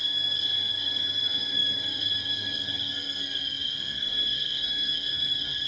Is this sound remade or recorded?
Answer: remade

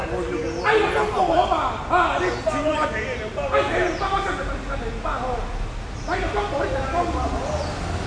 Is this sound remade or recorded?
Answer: recorded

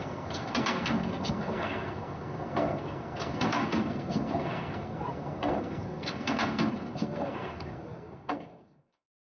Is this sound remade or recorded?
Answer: remade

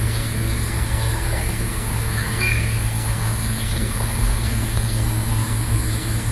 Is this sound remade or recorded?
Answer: remade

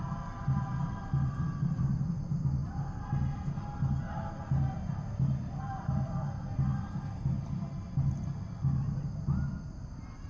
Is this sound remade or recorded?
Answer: recorded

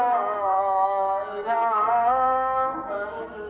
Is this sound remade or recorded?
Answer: remade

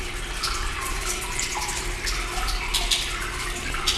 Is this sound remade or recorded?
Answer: recorded